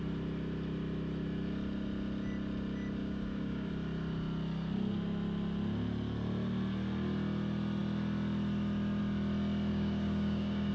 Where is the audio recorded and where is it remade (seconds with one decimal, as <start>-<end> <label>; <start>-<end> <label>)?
0.0-3.0 recorded; 3.0-3.7 remade; 3.7-9.7 recorded; 9.7-10.7 remade